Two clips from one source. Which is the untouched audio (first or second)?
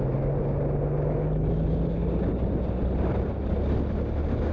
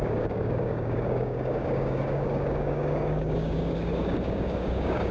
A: first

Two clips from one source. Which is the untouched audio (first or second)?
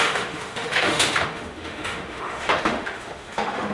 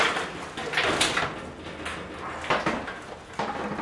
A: second